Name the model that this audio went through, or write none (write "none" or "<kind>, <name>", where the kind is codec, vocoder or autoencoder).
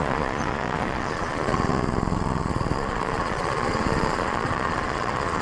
vocoder, Vocos